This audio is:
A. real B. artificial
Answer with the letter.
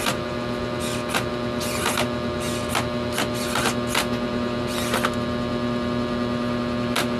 A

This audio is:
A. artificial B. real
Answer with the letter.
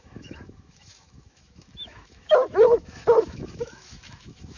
A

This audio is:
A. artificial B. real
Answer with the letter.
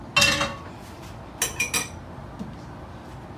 B